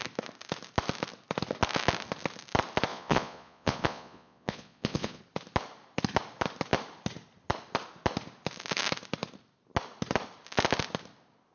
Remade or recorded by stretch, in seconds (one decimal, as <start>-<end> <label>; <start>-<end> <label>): 0.0-2.9 recorded; 2.9-5.2 remade; 5.2-11.5 recorded